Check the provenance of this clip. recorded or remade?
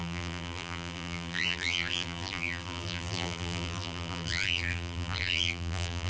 remade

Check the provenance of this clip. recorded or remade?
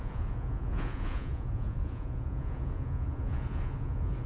remade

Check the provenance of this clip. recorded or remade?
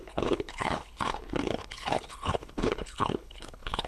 remade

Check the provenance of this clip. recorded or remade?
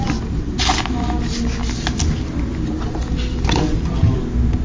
recorded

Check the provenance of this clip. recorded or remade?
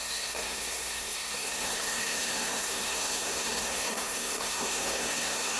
remade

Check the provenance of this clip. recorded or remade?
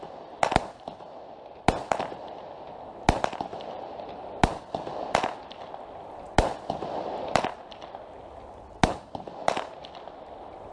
recorded